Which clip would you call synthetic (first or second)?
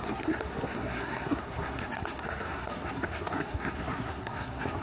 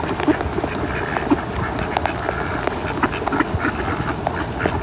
first